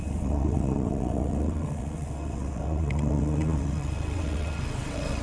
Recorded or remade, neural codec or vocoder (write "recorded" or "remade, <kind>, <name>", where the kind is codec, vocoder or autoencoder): remade, vocoder, WaveNeXt